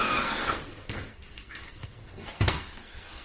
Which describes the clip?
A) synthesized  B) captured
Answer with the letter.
A